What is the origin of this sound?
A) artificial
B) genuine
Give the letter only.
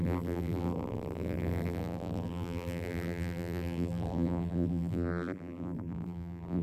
A